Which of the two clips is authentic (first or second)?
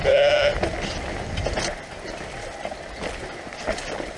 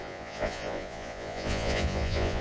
first